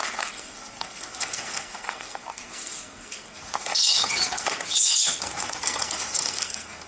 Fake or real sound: fake